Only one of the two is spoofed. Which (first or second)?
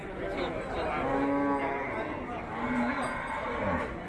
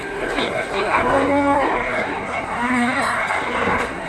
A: second